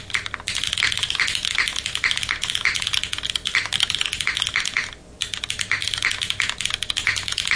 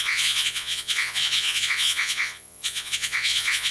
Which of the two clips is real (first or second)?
first